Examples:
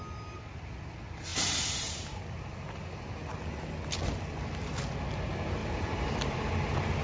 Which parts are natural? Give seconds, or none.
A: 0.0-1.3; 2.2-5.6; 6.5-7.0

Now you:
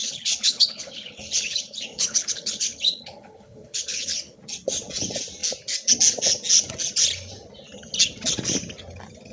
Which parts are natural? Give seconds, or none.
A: 4.4-9.3

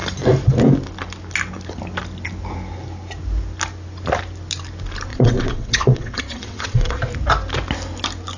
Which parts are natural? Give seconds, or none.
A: 0.0-5.1; 7.0-8.4

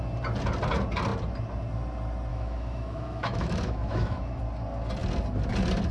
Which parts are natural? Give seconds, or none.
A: 0.0-2.3; 4.4-5.9

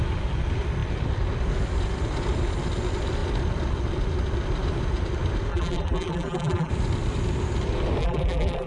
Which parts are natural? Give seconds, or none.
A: 0.0-5.5; 6.7-8.0

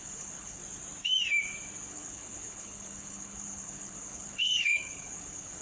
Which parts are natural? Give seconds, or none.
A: 0.6-1.9

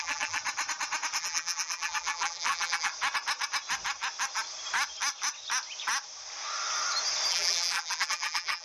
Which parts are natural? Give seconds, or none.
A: 0.4-1.2; 2.9-7.3

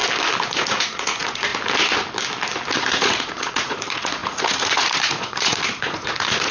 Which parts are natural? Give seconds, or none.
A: 0.0-0.5; 1.5-2.8